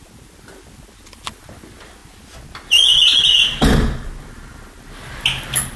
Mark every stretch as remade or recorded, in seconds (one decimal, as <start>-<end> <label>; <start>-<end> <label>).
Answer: 0.0-5.8 recorded